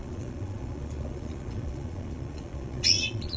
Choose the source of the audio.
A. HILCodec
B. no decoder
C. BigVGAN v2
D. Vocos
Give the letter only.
D